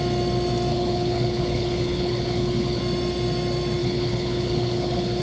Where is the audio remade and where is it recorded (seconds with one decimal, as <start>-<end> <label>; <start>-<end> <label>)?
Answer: 0.0-0.7 recorded; 0.7-2.8 remade; 2.8-3.8 recorded; 3.8-5.2 remade